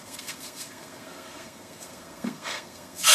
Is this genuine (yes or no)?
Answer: no